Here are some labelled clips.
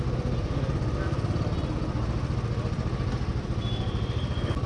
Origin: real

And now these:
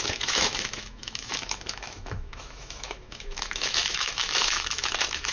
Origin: fake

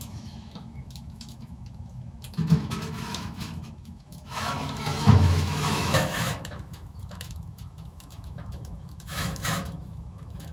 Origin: fake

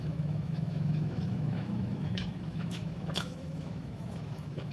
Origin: fake